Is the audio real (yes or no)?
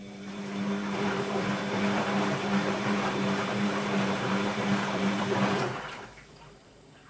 no